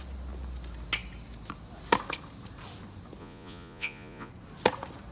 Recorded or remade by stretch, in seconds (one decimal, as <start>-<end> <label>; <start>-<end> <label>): 0.0-3.2 recorded; 3.2-4.3 remade; 4.3-5.1 recorded